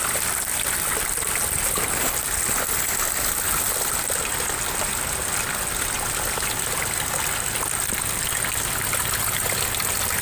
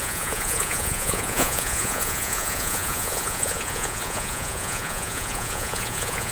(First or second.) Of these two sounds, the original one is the first